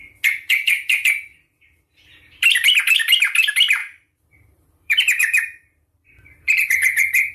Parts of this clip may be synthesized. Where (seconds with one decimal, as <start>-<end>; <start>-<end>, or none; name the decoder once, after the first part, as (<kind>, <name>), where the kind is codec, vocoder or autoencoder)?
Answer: 3.8-7.3 (vocoder, BigVGAN v2)